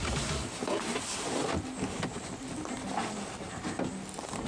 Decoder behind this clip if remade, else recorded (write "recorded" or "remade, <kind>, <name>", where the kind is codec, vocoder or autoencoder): recorded